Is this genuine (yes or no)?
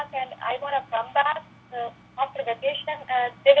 yes